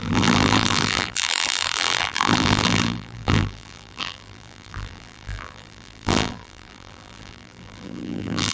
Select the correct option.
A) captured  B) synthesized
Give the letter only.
B